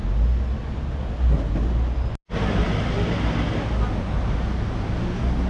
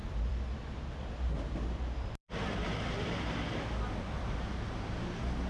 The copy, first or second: second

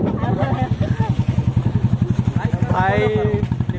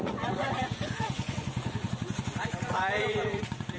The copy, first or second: second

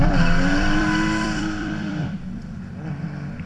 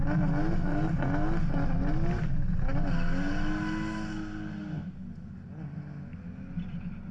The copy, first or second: first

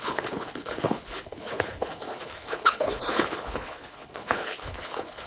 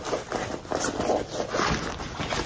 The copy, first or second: first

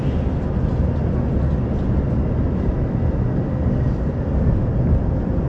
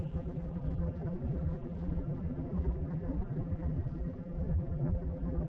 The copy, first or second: second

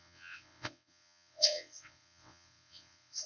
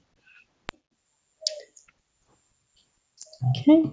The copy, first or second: first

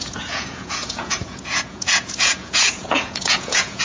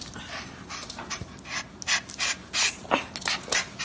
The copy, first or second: first